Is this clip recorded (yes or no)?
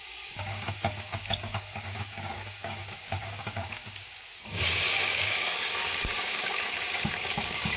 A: no